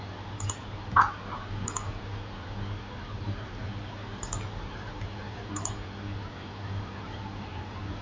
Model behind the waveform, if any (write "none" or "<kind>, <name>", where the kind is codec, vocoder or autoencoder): none